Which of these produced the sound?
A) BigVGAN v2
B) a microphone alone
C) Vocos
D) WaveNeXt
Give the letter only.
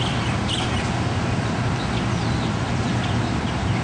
A